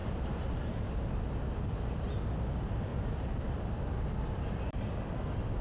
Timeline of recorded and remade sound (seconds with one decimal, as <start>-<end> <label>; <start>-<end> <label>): 0.0-0.9 remade; 0.9-2.9 recorded; 2.9-3.5 remade; 3.5-5.6 recorded